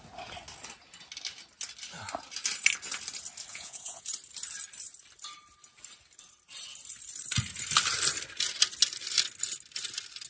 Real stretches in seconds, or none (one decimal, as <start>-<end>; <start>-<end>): 0.0-3.5; 4.1-10.3